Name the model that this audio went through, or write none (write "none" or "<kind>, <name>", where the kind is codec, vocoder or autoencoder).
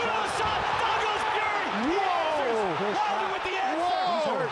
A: vocoder, BigVGAN v2